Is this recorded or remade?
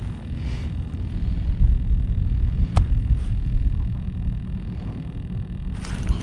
recorded